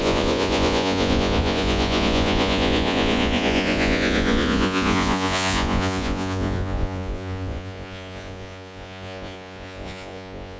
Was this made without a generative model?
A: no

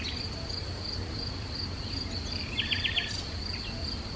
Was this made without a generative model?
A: yes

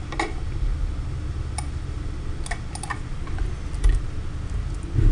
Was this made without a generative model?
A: yes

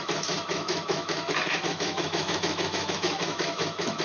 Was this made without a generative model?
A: no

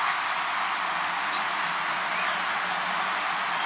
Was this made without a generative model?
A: yes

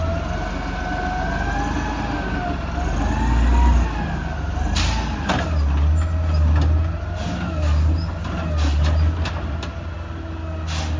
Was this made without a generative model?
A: yes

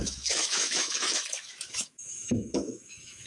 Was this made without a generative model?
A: no